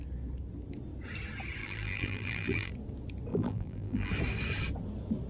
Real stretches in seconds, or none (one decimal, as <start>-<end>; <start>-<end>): 0.0-1.6; 2.7-3.3; 4.1-5.3